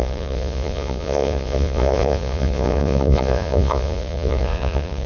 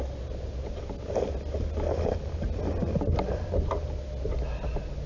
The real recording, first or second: second